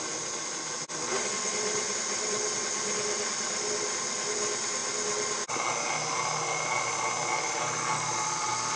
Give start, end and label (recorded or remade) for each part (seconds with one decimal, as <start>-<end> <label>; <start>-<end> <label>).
0.0-8.8 recorded